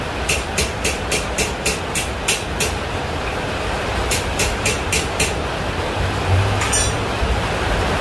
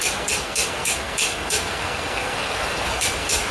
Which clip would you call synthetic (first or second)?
second